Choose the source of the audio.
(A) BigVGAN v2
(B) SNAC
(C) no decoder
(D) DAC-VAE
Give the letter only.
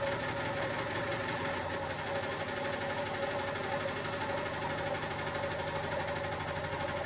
C